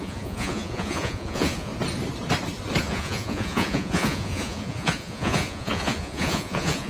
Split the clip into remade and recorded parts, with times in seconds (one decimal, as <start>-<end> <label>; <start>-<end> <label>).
0.0-1.7 remade; 1.7-2.8 recorded; 2.8-6.9 remade